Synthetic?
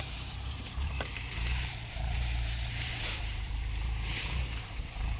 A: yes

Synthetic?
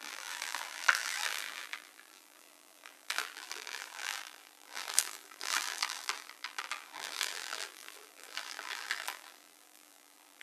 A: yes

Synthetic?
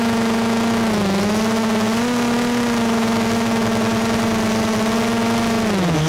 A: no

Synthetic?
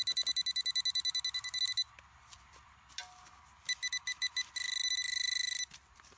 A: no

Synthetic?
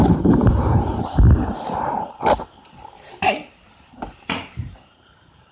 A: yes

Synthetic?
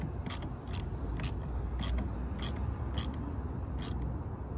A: no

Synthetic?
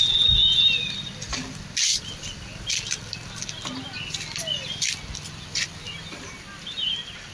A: no